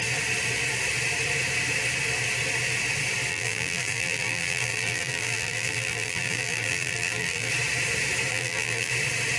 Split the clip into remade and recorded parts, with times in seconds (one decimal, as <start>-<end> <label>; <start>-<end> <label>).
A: 0.0-3.3 recorded; 3.3-7.5 remade; 7.5-8.3 recorded; 8.3-8.9 remade; 8.9-9.4 recorded